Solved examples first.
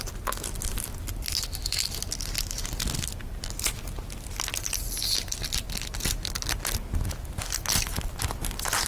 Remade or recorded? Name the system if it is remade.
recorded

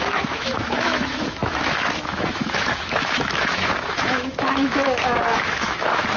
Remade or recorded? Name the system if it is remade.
remade, autoencoder, DAC-VAE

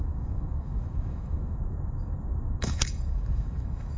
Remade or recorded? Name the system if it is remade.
remade, autoencoder, DAC-VAE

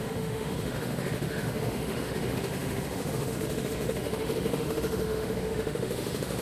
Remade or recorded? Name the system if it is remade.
remade, autoencoder, DAC-VAE